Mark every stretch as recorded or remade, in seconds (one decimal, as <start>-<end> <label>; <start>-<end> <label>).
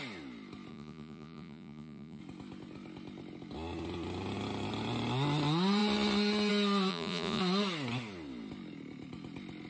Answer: 0.0-0.7 recorded; 0.7-2.2 remade; 2.2-6.9 recorded; 6.9-7.4 remade; 7.4-9.7 recorded